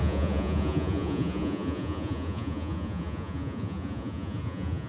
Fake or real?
fake